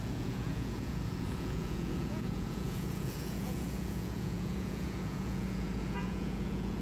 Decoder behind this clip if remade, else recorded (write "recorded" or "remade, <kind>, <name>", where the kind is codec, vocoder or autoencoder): remade, vocoder, Vocos